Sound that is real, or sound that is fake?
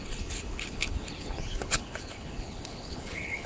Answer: fake